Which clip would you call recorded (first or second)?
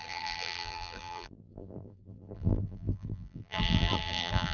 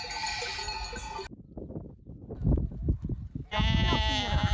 second